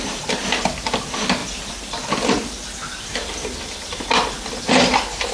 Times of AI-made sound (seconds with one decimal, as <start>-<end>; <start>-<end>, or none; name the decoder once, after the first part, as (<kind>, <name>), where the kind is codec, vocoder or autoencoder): none